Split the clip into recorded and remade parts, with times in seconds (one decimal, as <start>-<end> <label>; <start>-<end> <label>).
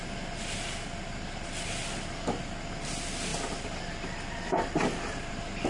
0.0-5.7 recorded